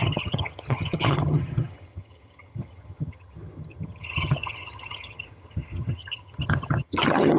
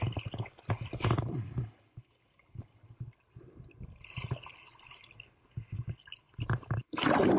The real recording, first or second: second